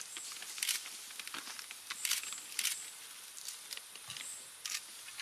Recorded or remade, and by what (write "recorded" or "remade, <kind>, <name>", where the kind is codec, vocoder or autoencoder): recorded